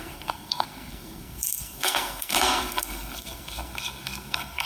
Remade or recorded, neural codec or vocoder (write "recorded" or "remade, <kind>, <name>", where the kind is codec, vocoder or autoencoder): remade, codec, SNAC